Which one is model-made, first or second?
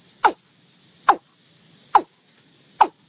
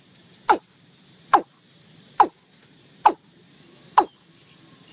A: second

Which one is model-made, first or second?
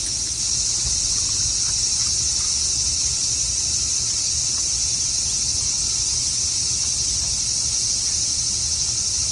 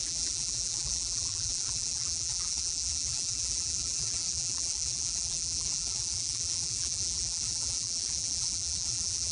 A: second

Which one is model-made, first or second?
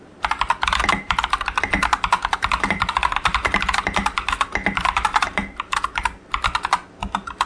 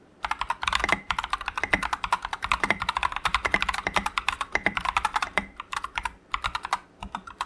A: second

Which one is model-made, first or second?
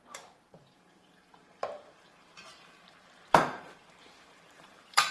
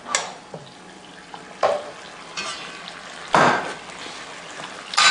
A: first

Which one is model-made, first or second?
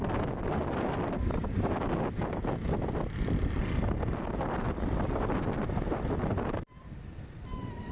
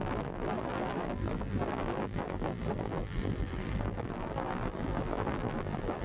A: second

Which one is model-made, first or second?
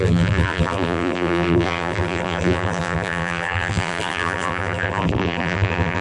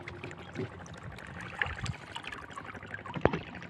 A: first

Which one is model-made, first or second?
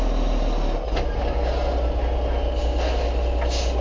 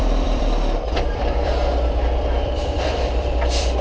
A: second